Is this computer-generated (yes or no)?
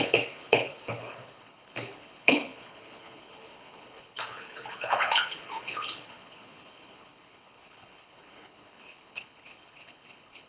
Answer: yes